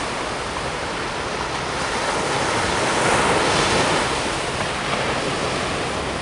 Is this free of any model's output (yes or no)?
yes